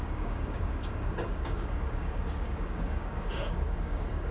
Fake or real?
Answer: fake